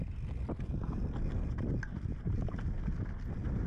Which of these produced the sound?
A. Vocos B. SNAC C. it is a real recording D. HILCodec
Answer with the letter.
C